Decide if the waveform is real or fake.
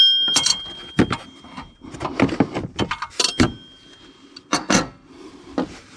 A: real